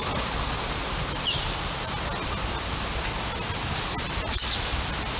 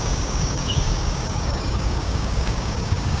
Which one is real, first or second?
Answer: first